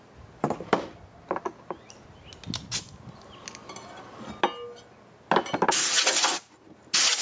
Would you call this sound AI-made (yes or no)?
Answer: no